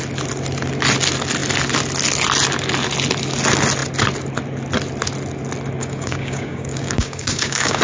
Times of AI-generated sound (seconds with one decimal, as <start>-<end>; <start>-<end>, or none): 5.8-7.8